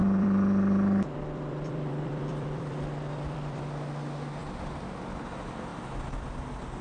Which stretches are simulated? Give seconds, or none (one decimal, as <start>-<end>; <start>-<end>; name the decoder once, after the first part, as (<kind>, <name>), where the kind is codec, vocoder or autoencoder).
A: 0.0-3.6 (vocoder, BigVGAN v2)